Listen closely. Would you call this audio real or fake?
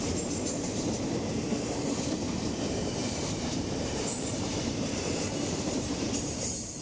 fake